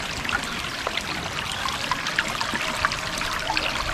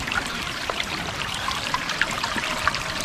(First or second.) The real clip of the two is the first